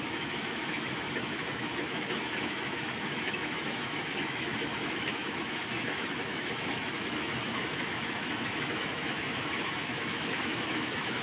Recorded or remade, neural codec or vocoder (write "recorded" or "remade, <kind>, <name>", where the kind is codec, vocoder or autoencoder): remade, autoencoder, DAC-VAE